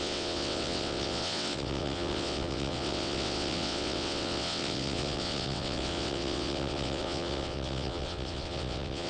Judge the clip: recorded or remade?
remade